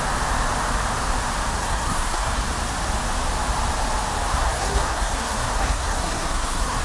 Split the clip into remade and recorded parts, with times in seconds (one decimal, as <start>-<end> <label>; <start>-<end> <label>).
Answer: 0.0-1.6 recorded; 1.6-2.4 remade; 2.4-4.3 recorded; 4.3-6.8 remade